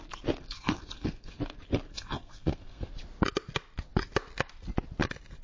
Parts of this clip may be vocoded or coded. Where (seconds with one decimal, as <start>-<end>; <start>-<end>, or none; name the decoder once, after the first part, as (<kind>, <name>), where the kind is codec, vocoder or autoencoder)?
0.4-1.4 (codec, SNAC); 1.9-2.9